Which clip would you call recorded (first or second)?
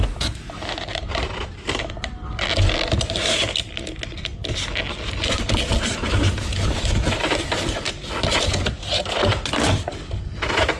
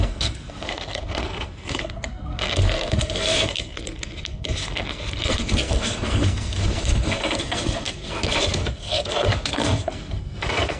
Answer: first